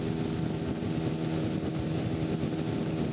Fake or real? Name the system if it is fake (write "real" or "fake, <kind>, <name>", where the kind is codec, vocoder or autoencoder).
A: real